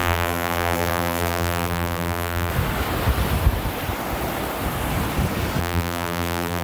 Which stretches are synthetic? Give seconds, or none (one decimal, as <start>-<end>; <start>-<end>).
0.0-2.5; 5.6-6.6